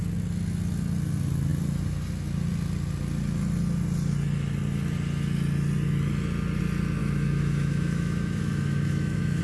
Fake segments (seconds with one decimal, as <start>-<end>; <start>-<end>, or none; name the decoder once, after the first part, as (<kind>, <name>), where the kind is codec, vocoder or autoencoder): 7.0-9.4 (autoencoder, DAC-VAE)